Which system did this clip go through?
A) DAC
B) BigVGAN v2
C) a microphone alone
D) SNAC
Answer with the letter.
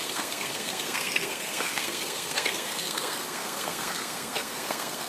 D